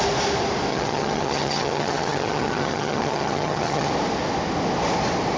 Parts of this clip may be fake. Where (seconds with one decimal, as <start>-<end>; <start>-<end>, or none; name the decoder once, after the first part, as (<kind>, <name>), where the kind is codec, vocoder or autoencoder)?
0.7-3.9 (vocoder, HiFi-GAN)